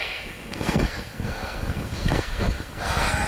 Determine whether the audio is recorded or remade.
remade